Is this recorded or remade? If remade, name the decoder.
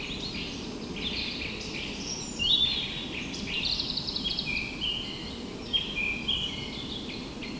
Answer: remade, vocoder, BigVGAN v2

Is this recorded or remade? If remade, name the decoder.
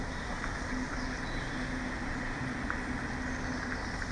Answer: recorded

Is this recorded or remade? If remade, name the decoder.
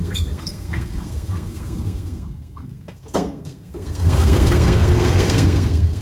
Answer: remade, codec, SNAC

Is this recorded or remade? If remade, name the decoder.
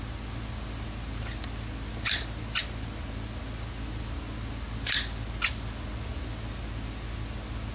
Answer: recorded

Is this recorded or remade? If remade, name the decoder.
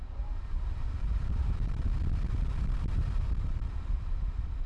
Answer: remade, vocoder, BigVGAN v2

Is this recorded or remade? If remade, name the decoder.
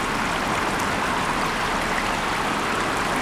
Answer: recorded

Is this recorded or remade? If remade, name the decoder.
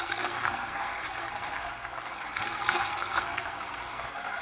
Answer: remade, codec, SNAC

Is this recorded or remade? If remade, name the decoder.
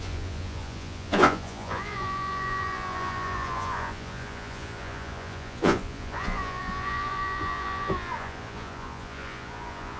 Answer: remade, vocoder, Vocos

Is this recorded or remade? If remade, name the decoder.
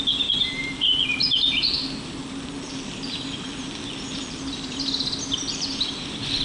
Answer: recorded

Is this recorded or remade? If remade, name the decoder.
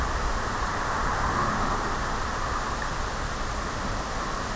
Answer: recorded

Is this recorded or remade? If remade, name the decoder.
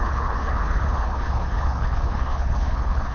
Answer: remade, codec, HILCodec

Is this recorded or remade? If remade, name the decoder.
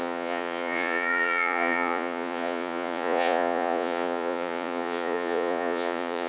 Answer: remade, vocoder, Vocos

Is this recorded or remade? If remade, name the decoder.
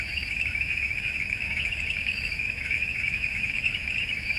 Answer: remade, autoencoder, DAC-VAE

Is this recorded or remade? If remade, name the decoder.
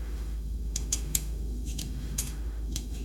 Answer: remade, autoencoder, DAC-VAE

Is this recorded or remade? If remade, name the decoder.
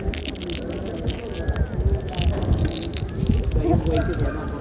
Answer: recorded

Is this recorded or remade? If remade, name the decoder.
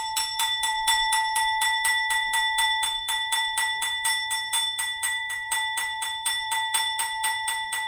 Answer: remade, vocoder, BigVGAN v2